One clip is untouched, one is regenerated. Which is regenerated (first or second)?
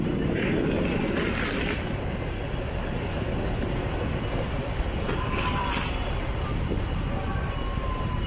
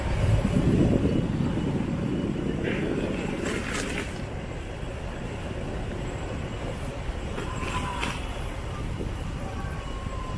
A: second